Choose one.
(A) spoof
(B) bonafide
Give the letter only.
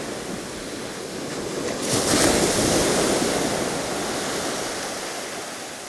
B